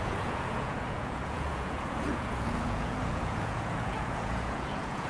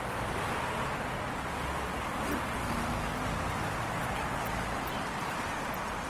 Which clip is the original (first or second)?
second